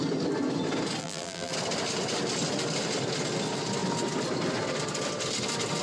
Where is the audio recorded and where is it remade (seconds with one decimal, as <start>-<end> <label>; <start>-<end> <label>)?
0.0-1.0 recorded; 1.0-1.5 remade; 1.5-5.8 recorded